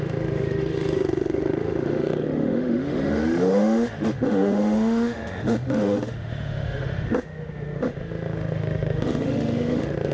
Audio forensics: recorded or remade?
remade